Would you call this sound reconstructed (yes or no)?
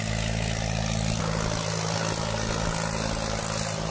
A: no